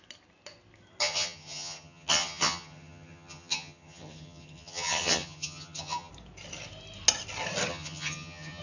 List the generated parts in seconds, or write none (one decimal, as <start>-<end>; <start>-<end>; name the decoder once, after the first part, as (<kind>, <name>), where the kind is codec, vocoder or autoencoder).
1.0-6.1 (vocoder, HiFi-GAN); 7.7-8.6